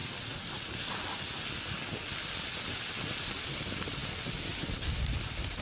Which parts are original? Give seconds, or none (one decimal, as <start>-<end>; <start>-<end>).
0.0-5.6